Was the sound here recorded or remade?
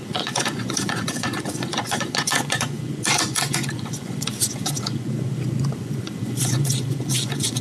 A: remade